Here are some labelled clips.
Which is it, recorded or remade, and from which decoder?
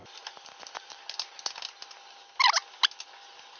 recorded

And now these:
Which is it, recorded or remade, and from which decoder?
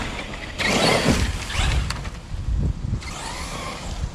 recorded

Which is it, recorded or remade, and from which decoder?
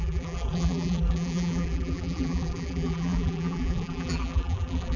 remade, vocoder, BigVGAN v2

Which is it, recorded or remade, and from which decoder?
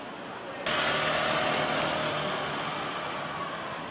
recorded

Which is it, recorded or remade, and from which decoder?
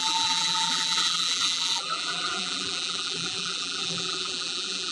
remade, vocoder, BigVGAN v2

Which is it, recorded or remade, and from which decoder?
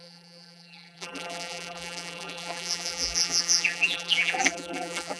remade, vocoder, BigVGAN v2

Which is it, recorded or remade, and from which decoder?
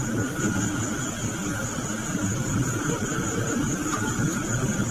recorded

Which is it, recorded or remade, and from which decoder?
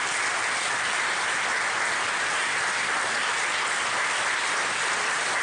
recorded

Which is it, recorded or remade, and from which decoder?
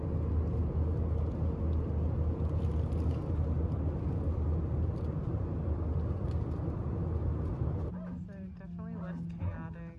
recorded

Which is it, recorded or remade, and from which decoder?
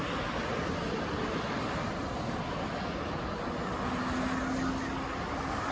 recorded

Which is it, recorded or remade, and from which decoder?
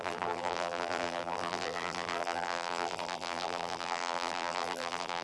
remade, vocoder, BigVGAN v2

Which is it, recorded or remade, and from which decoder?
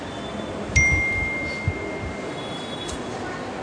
recorded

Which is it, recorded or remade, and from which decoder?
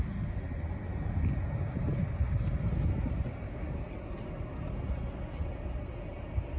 recorded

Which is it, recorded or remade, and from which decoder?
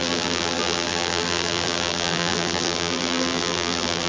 remade, vocoder, BigVGAN v2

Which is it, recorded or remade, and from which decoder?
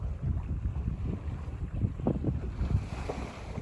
recorded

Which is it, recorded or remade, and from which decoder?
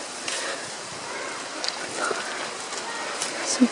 recorded